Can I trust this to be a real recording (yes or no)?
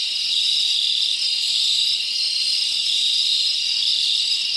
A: yes